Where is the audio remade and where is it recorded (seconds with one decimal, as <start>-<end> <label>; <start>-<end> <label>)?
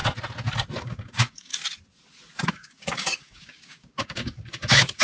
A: 0.0-0.8 recorded; 0.8-1.5 remade; 1.5-2.5 recorded; 2.5-5.0 remade